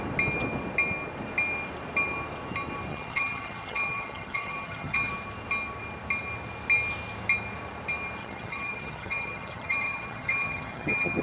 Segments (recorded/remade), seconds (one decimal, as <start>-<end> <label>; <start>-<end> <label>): 0.0-2.9 recorded; 2.9-5.1 remade; 5.1-8.2 recorded; 8.2-11.2 remade